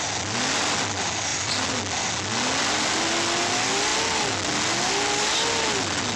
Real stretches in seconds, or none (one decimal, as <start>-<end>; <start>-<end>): 0.0-6.2